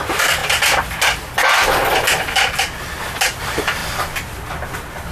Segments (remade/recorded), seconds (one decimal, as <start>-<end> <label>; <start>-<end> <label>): 0.0-0.4 remade; 0.4-3.4 recorded; 3.4-3.8 remade; 3.8-5.1 recorded

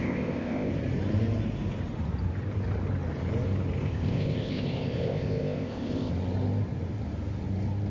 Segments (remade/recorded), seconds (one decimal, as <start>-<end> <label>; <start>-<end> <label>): 0.0-0.7 remade; 0.7-3.8 recorded; 3.8-6.1 remade; 6.1-7.9 recorded

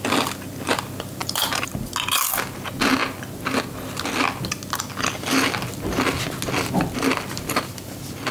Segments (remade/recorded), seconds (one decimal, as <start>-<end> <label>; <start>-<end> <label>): 0.0-1.2 recorded; 1.2-1.7 remade; 1.7-8.3 recorded

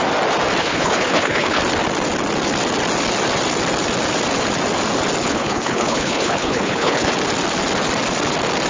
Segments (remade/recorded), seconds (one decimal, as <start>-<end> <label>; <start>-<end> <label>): 0.0-0.6 recorded; 0.6-1.6 remade; 1.6-5.2 recorded; 5.2-7.1 remade; 7.1-8.7 recorded

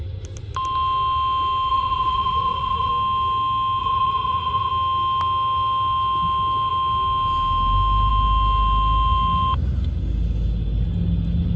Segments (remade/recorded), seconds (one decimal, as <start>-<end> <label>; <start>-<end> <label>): 0.0-1.7 recorded; 1.7-2.9 remade; 2.9-3.8 recorded; 3.8-4.7 remade; 4.7-11.6 recorded

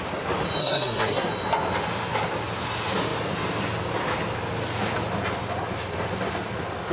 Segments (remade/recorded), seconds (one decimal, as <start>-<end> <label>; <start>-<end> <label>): 0.0-0.6 recorded; 0.6-1.3 remade; 1.3-6.9 recorded